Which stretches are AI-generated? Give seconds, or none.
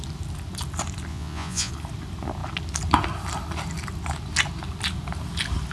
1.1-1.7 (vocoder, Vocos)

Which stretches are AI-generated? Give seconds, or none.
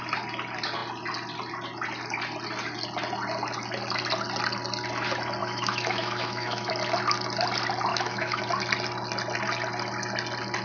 5.4-6.7 (autoencoder, DAC-VAE); 7.9-8.4